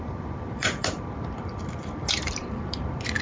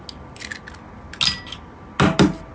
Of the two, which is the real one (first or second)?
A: second